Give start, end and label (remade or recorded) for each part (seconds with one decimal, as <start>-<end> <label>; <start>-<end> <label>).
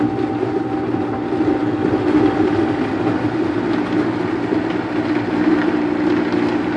0.0-6.8 recorded